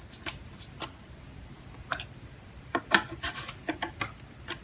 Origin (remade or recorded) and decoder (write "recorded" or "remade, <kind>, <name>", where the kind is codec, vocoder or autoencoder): remade, vocoder, BigVGAN v2